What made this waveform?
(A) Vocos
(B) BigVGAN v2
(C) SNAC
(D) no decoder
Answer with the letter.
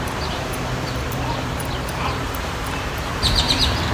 B